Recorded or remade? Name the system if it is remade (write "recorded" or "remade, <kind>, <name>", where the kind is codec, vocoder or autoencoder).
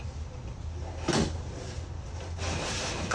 recorded